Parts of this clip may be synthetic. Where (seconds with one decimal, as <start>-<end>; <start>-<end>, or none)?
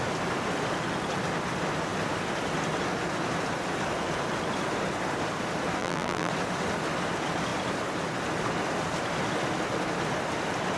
5.8-6.3